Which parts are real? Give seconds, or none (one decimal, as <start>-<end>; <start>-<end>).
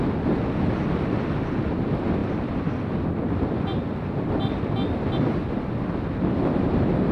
0.0-7.1